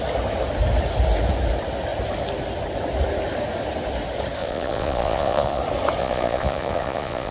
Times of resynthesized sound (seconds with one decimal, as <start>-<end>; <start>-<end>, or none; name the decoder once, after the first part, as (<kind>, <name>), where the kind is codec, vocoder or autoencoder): 4.4-5.6 (vocoder, Vocos); 6.0-7.3